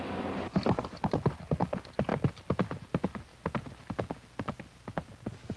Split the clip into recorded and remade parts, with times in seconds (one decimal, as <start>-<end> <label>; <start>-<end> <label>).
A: 0.0-5.6 recorded